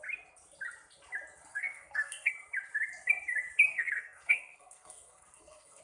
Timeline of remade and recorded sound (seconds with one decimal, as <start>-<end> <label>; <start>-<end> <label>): 0.0-1.5 recorded; 1.5-2.3 remade; 2.3-3.7 recorded; 3.7-5.8 remade